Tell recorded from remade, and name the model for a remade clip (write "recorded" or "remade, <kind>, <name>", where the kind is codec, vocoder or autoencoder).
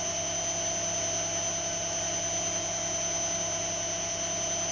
recorded